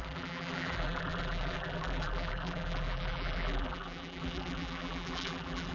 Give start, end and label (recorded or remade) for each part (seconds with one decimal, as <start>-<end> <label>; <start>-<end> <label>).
0.0-5.7 remade